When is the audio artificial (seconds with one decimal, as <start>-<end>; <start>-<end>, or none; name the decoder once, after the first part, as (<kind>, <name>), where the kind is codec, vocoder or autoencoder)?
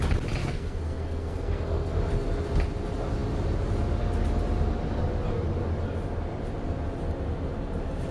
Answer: 0.4-2.0 (codec, SNAC)